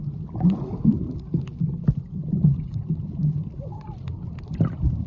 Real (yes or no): yes